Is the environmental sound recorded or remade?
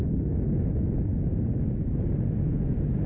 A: recorded